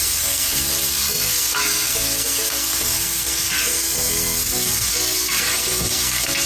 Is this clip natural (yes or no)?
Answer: no